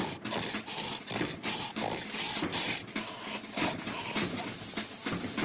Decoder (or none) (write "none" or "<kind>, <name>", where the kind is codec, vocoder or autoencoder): vocoder, BigVGAN v2